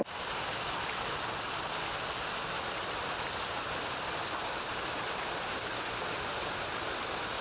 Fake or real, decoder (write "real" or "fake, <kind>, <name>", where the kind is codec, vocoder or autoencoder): real